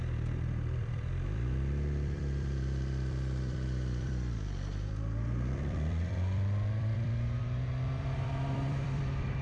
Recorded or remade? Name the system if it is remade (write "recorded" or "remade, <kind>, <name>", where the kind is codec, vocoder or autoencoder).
remade, vocoder, BigVGAN v2